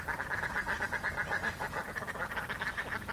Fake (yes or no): no